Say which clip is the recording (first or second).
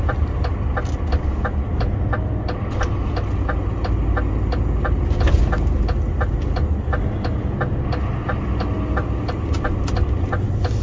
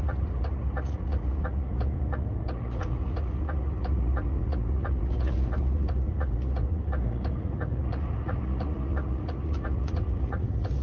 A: first